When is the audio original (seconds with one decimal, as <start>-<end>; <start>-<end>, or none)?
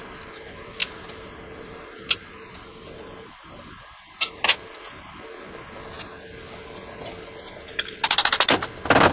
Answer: 0.0-9.1